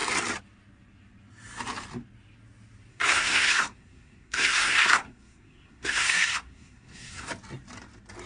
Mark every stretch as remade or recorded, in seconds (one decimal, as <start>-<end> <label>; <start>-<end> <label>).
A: 0.0-2.9 recorded; 2.9-7.3 remade; 7.3-8.3 recorded